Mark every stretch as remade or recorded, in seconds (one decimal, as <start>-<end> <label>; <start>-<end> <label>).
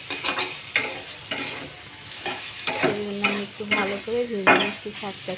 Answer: 0.0-2.0 recorded; 2.0-2.7 remade; 2.7-5.4 recorded